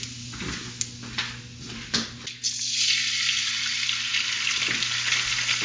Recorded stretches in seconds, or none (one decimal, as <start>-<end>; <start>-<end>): 0.0-5.6